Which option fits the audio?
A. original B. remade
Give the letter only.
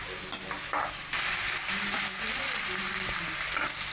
A